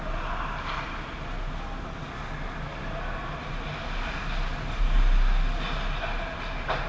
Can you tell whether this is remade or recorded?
recorded